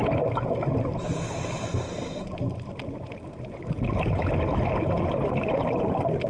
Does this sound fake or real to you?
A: real